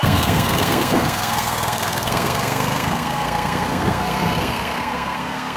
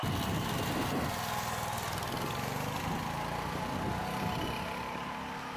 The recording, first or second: second